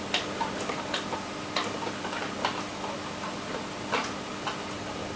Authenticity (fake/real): real